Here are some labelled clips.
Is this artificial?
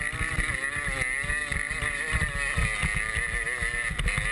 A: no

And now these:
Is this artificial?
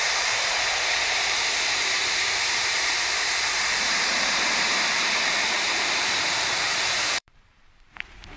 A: yes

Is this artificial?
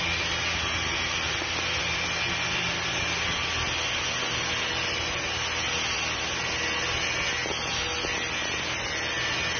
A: no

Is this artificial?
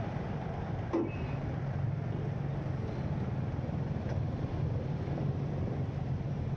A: no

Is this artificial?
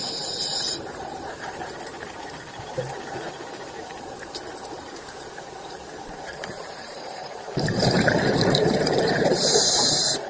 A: yes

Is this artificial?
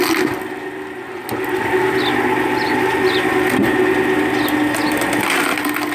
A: no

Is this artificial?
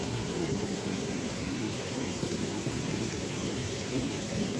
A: yes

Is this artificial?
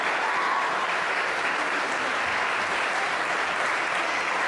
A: no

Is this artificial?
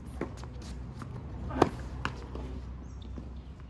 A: no